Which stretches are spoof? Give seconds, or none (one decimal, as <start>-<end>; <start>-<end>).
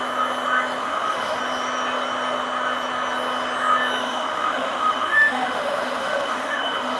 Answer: 0.8-1.4; 4.0-7.0